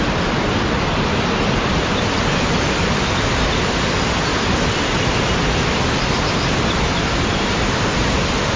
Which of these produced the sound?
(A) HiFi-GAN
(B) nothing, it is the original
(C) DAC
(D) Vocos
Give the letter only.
B